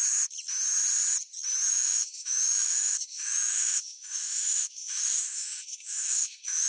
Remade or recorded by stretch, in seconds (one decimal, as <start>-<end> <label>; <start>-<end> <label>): 0.0-1.7 recorded; 1.7-6.7 remade